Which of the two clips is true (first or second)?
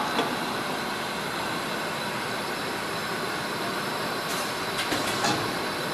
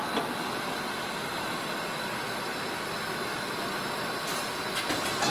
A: second